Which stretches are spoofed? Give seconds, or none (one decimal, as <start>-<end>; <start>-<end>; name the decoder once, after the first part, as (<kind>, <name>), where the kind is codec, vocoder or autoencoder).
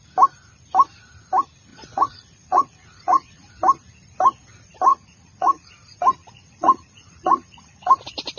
1.7-3.5 (vocoder, Vocos); 4.9-5.7; 6.2-7.9